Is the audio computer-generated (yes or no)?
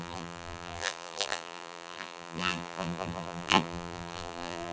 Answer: yes